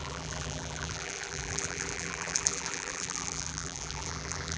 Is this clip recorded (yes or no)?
no